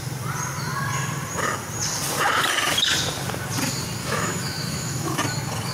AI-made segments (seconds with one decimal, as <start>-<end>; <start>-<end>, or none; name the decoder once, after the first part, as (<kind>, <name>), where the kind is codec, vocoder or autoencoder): 4.0-5.2 (autoencoder, DAC-VAE)